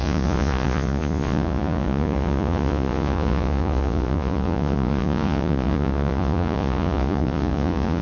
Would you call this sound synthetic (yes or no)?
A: yes